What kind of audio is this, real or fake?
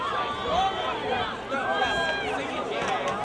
real